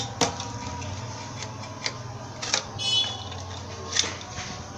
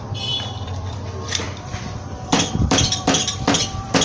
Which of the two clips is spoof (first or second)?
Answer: second